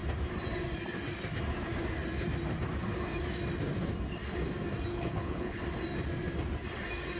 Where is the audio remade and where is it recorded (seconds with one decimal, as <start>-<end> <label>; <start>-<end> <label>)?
0.0-4.9 recorded; 4.9-5.6 remade; 5.6-7.2 recorded